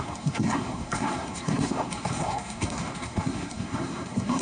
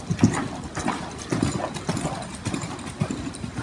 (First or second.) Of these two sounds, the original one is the second